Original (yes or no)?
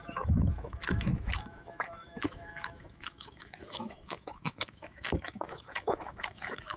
no